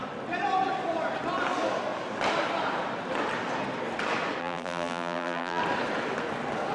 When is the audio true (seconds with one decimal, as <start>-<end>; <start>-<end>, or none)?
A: 0.0-4.4; 5.6-6.7